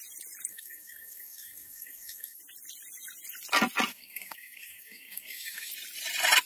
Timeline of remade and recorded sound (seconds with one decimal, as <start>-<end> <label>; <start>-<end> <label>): 0.0-0.5 recorded; 0.5-2.4 remade; 2.4-3.9 recorded; 3.9-5.7 remade; 5.7-6.5 recorded